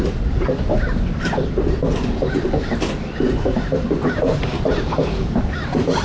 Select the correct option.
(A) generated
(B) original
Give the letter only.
B